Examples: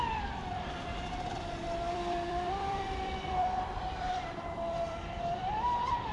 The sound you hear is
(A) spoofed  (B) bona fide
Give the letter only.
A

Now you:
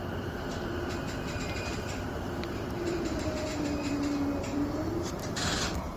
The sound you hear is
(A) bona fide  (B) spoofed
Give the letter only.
B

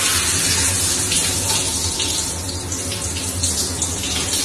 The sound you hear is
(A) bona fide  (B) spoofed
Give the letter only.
A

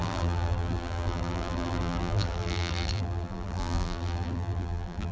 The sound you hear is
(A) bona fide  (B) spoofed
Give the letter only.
B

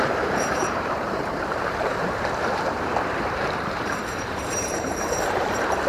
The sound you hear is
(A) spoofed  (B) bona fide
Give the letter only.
A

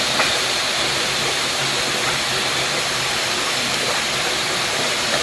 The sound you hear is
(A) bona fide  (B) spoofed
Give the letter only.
A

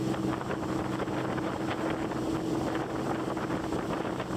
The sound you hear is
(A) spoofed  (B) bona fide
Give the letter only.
B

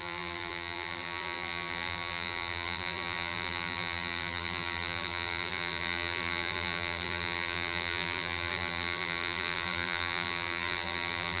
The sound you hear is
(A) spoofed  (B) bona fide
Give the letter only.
A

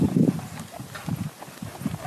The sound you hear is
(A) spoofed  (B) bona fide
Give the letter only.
B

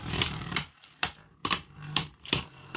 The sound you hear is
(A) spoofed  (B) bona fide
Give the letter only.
A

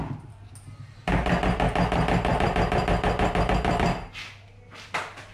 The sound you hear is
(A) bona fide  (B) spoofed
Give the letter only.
A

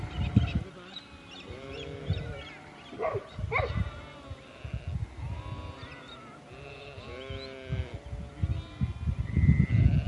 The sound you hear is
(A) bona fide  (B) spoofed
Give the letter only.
A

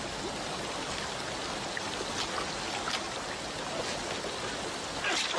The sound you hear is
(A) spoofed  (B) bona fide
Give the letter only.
B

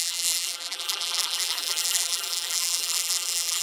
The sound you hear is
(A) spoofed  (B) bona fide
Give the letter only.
A